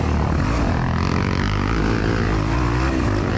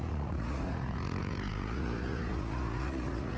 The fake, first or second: second